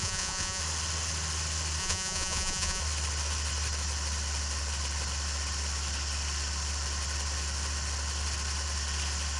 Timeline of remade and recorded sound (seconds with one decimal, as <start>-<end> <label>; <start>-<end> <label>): 0.0-0.6 remade; 0.6-1.8 recorded; 1.8-2.8 remade; 2.8-9.4 recorded

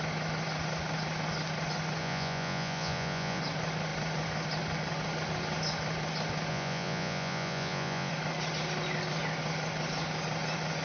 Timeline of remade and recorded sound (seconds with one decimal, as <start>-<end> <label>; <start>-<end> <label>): 0.0-2.0 recorded; 2.0-3.4 remade; 3.4-6.5 recorded; 6.5-8.1 remade; 8.1-10.8 recorded

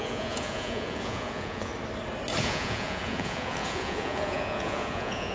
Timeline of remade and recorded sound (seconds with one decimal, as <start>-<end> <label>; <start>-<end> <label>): 0.0-1.7 remade; 1.7-2.4 recorded; 2.4-5.3 remade

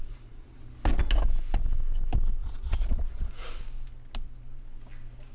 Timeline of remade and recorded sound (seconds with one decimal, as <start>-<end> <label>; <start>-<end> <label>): 0.0-0.7 remade; 0.7-2.4 recorded; 2.4-3.3 remade; 3.3-5.3 recorded

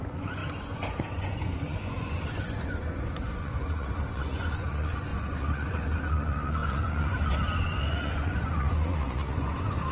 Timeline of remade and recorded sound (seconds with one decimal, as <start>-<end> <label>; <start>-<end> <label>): 0.0-9.9 remade

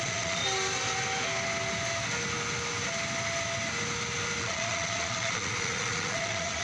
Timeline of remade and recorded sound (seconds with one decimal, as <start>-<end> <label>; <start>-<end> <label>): 0.0-0.4 remade; 0.4-4.4 recorded; 4.4-6.6 remade